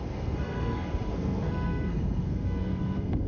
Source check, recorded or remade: remade